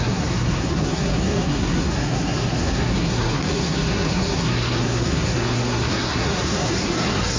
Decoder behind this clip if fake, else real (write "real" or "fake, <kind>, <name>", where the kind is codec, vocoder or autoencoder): fake, codec, SNAC